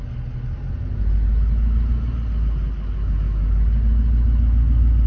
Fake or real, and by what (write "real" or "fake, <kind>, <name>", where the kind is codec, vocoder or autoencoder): real